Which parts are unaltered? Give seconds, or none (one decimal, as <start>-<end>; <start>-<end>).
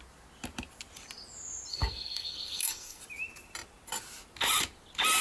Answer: 0.0-1.7; 3.0-5.2